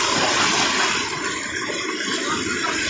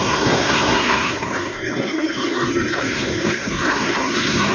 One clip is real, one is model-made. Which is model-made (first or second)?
second